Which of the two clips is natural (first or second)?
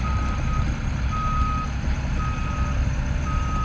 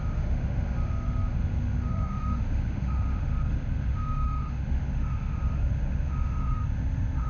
first